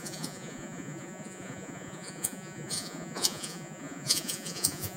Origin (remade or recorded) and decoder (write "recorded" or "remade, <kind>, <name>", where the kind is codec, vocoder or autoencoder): remade, vocoder, Vocos